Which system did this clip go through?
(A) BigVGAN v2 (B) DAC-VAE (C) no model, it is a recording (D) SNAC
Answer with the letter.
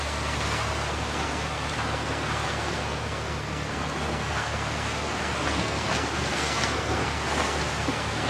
D